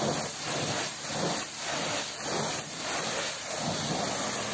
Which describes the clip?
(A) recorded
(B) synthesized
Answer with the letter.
A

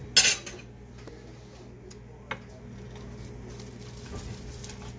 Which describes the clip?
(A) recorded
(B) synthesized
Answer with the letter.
A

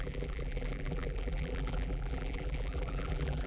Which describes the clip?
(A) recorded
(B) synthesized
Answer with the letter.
B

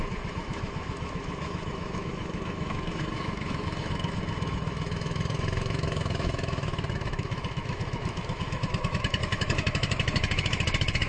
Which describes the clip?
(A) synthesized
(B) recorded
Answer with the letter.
A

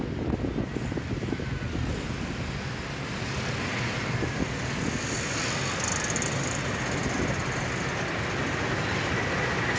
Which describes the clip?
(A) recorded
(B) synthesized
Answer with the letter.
A